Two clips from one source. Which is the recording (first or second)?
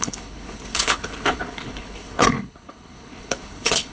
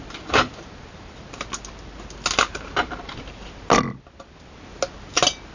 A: second